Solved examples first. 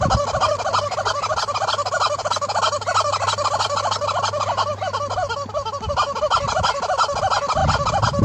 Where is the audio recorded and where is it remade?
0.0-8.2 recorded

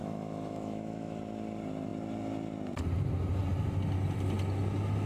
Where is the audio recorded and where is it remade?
0.0-1.2 remade; 1.2-5.1 recorded

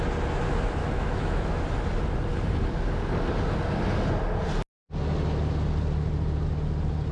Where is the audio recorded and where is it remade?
0.0-0.8 recorded; 0.8-1.6 remade; 1.6-7.1 recorded

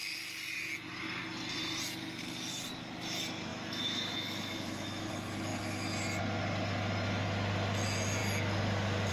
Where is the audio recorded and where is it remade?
0.0-3.5 recorded; 3.5-5.1 remade; 5.1-9.1 recorded

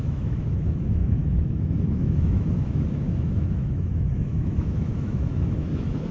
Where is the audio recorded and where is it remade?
0.0-6.1 remade

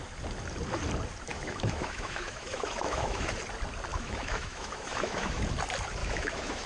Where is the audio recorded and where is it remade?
0.0-1.3 recorded; 1.3-3.3 remade; 3.3-3.9 recorded; 3.9-5.4 remade; 5.4-6.0 recorded; 6.0-6.7 remade

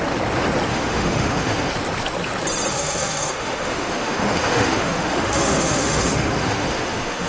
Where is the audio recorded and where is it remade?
0.0-0.7 recorded; 0.7-1.7 remade; 1.7-2.7 recorded; 2.7-7.3 remade